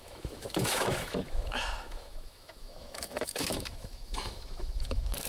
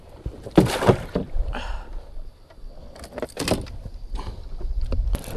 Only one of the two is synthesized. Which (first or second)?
first